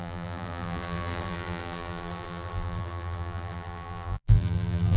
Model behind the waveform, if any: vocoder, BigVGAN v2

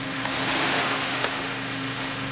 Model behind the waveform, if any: autoencoder, DAC-VAE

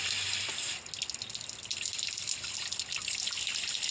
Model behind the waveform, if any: none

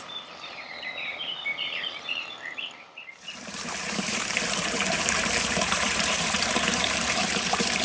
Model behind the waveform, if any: vocoder, BigVGAN v2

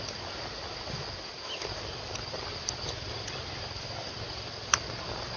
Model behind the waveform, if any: none